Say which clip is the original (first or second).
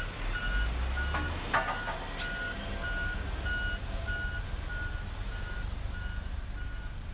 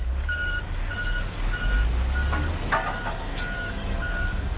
first